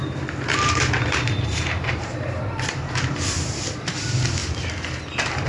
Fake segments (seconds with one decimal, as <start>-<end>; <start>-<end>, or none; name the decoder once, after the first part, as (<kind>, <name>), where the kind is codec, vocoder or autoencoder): 0.0-4.4 (vocoder, BigVGAN v2)